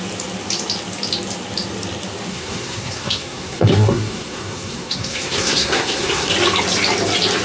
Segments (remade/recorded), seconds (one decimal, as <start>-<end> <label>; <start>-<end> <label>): 0.0-2.3 recorded; 2.3-6.3 remade; 6.3-7.4 recorded